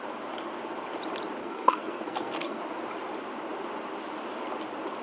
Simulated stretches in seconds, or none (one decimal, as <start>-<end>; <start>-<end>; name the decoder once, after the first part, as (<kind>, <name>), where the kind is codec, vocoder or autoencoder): 1.4-2.6 (codec, SNAC)